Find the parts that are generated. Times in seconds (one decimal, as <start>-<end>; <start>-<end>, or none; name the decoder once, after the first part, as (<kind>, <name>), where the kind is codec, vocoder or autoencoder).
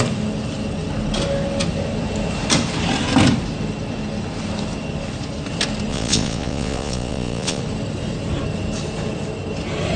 5.9-7.6 (vocoder, Vocos)